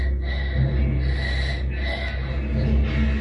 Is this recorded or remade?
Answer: recorded